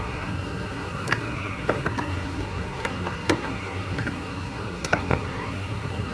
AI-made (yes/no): yes